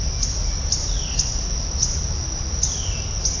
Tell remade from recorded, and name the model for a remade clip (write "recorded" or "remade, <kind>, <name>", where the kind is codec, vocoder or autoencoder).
recorded